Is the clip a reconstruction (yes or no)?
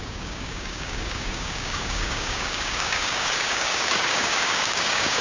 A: yes